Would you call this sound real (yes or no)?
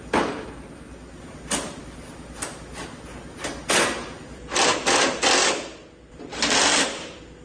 yes